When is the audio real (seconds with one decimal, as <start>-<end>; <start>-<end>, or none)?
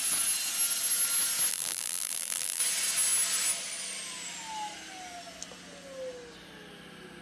0.0-1.5; 2.6-7.2